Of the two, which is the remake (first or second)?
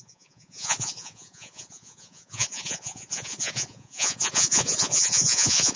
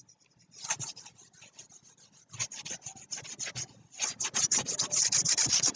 first